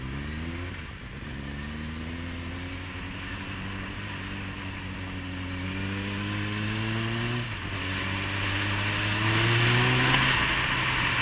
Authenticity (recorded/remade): recorded